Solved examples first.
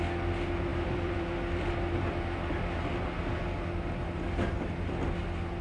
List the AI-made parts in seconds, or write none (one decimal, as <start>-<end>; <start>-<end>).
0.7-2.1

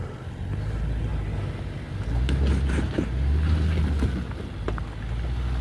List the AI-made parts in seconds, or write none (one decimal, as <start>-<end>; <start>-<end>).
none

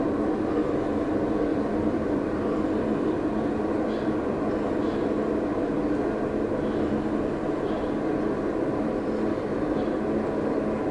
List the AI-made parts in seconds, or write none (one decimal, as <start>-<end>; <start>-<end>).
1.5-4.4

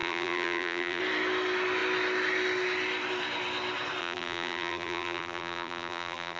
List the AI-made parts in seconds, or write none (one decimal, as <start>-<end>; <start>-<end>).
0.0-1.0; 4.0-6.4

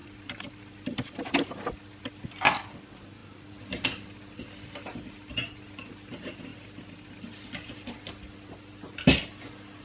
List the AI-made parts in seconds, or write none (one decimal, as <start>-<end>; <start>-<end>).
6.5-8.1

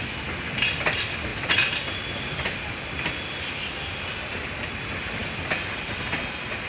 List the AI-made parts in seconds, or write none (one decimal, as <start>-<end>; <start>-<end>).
5.2-6.7

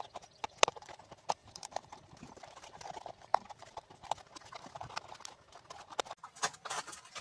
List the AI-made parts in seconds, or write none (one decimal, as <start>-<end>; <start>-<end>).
1.4-2.9; 3.3-3.9

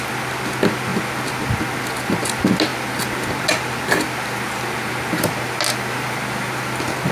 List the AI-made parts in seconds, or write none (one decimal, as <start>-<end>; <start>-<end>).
none